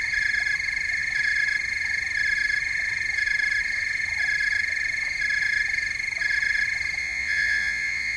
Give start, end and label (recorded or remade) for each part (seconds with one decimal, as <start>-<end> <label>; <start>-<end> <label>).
0.0-7.0 recorded; 7.0-8.2 remade

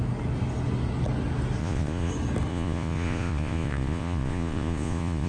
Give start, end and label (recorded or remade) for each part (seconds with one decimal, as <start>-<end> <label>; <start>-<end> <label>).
0.0-1.6 recorded; 1.6-2.1 remade; 2.1-2.5 recorded; 2.5-5.3 remade